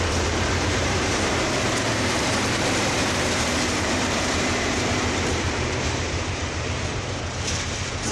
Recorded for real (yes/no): no